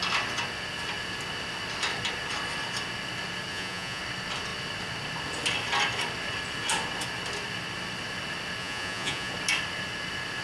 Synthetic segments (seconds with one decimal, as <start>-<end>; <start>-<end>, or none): 3.5-4.0; 8.6-9.3